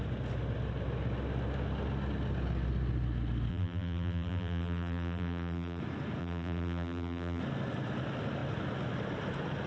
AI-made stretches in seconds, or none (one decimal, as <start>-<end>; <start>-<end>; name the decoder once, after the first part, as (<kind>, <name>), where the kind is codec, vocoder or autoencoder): 3.5-5.8 (vocoder, BigVGAN v2); 6.2-7.4